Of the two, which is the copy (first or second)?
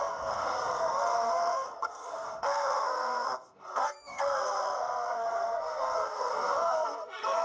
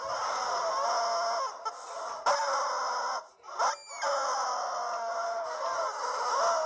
first